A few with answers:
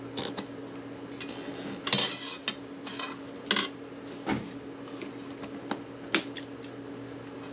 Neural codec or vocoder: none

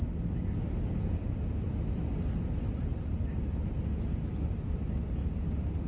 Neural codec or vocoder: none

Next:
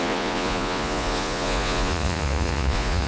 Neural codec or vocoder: vocoder, Vocos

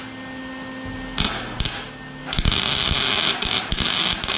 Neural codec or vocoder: none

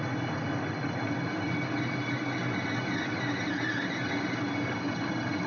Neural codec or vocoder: none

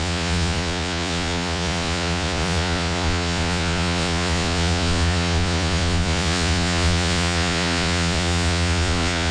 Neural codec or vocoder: vocoder, Vocos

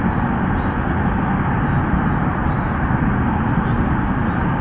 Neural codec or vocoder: none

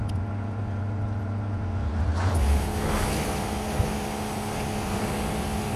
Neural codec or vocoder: none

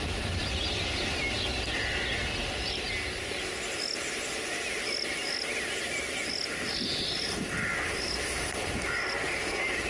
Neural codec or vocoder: none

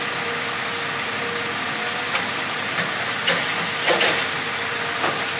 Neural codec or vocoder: none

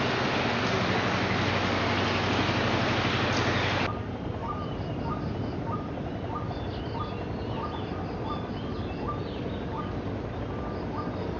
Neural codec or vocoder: none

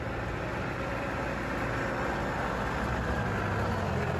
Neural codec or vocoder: none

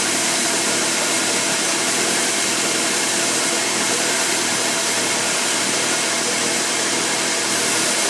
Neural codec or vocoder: vocoder, BigVGAN v2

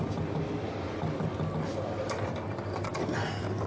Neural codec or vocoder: none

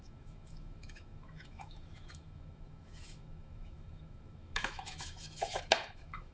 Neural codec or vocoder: autoencoder, DAC-VAE